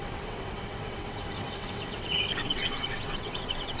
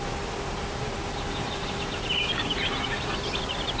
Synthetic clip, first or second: first